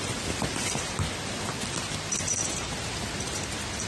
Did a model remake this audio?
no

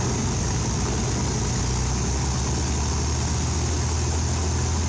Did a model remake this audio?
no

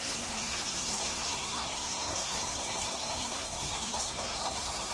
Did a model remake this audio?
yes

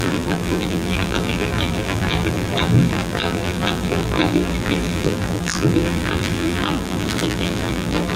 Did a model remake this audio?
yes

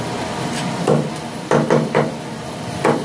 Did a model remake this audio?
yes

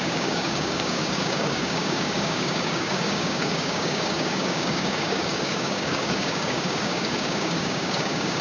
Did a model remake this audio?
yes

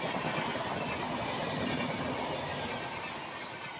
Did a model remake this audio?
no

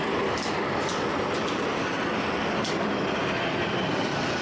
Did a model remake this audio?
no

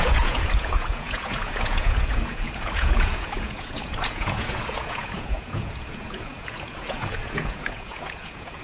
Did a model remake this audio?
yes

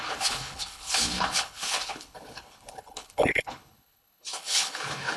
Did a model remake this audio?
yes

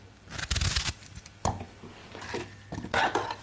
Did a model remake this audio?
yes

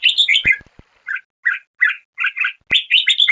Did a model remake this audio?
no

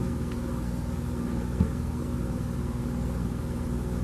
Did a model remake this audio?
yes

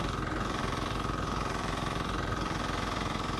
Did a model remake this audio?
yes